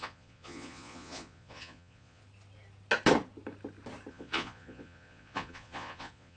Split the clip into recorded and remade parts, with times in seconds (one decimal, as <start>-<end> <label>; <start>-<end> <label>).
0.0-2.2 remade; 2.2-4.1 recorded; 4.1-6.4 remade